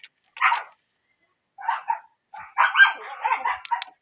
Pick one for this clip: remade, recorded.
recorded